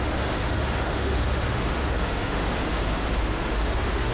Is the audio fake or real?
fake